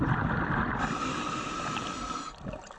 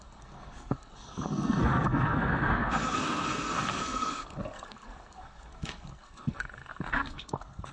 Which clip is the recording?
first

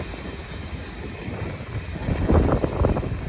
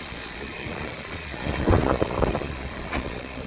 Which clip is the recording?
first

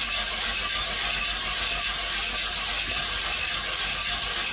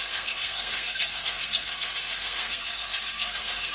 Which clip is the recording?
first